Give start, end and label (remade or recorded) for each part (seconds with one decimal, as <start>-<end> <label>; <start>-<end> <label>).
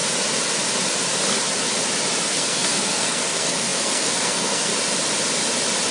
0.0-2.3 recorded; 2.3-4.7 remade; 4.7-5.9 recorded